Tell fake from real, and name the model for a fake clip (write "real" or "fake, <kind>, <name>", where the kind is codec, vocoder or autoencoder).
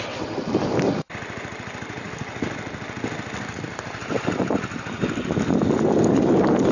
real